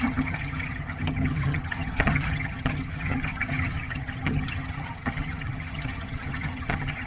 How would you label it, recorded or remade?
remade